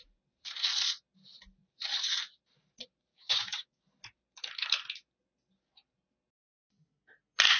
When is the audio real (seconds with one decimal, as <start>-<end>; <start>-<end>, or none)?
0.0-3.1; 3.8-7.6